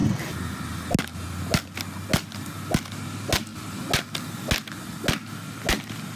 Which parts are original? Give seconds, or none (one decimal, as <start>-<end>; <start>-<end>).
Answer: 0.0-6.2